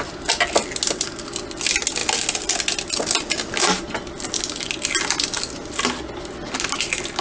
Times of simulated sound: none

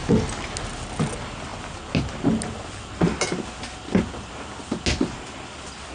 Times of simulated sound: none

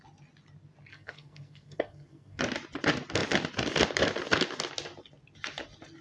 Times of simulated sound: 0.9-2.4 (codec, SNAC)

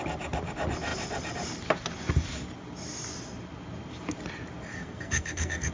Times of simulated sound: 4.7-5.7 (codec, SNAC)

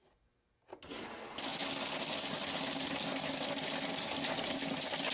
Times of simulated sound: none